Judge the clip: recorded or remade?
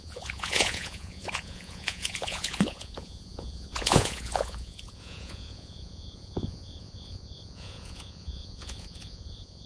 remade